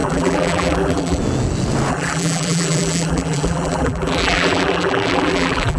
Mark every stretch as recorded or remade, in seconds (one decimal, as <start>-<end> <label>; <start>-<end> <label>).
0.0-1.2 remade; 1.2-1.9 recorded; 1.9-5.8 remade